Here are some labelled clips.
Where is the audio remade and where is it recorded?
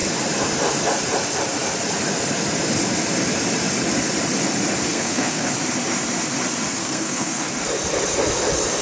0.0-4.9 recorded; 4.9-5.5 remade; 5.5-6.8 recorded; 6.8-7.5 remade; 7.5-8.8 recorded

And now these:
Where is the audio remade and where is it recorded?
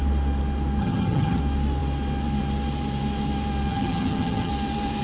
0.0-0.8 recorded; 0.8-1.4 remade; 1.4-3.7 recorded; 3.7-4.5 remade; 4.5-5.0 recorded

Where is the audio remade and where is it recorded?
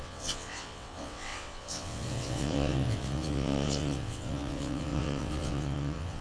0.0-6.2 remade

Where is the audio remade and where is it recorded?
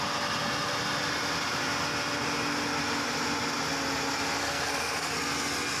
0.0-4.4 recorded; 4.4-5.1 remade; 5.1-5.8 recorded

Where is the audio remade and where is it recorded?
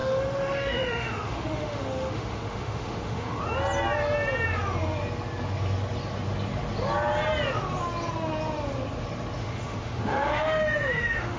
0.0-3.4 remade; 3.4-9.4 recorded; 9.4-11.4 remade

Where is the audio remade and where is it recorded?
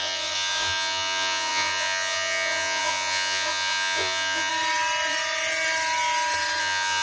0.0-4.5 remade; 4.5-6.6 recorded; 6.6-7.0 remade